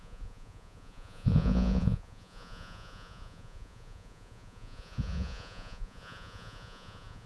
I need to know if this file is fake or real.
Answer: fake